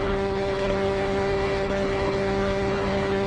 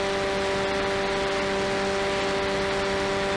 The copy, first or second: first